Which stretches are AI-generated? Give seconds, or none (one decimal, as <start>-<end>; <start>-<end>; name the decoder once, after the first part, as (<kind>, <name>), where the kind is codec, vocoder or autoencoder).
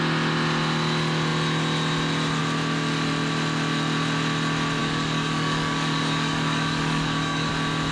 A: 4.8-7.5 (codec, DAC)